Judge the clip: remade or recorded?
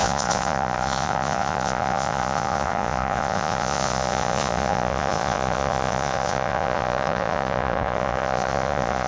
remade